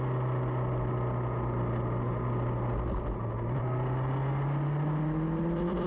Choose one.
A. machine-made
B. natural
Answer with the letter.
B